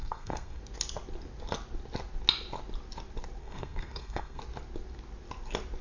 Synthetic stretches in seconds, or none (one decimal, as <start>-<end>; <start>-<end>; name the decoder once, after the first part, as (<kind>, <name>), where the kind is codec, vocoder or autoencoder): 0.0-0.6 (codec, SNAC); 3.4-4.4